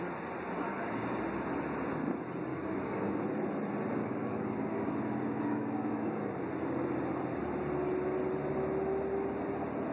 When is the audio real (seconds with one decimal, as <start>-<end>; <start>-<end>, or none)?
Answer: 0.0-0.7; 1.2-2.5; 3.2-4.0; 6.3-9.9